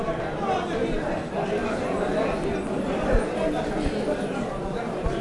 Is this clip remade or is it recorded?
recorded